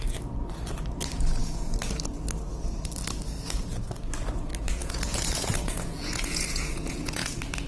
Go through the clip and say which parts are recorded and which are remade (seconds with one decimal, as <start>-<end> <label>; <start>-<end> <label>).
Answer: 0.0-4.8 recorded; 4.8-7.3 remade; 7.3-7.7 recorded